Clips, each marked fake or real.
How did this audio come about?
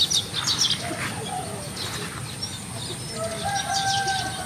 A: real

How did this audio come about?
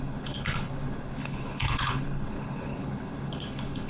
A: fake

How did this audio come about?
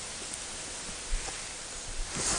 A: fake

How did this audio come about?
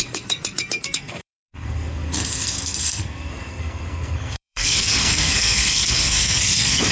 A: fake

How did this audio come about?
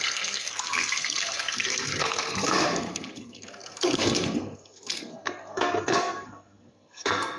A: fake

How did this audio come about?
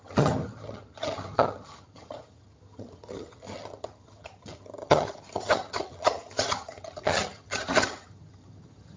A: fake